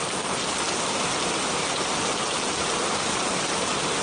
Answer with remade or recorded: recorded